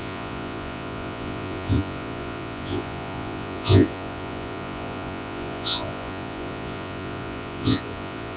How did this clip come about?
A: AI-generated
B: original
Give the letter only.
A